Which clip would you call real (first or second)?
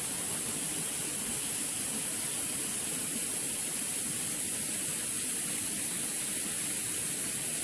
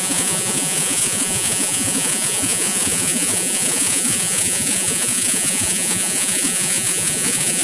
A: first